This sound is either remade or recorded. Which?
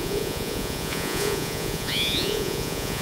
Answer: remade